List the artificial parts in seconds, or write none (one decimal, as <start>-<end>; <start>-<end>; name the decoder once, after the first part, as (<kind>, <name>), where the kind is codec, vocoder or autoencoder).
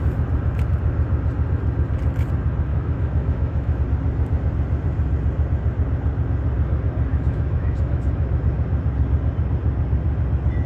2.7-3.8 (autoencoder, DAC-VAE); 7.1-8.4